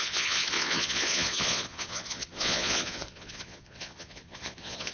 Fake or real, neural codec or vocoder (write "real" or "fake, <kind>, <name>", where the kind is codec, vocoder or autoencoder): fake, vocoder, Vocos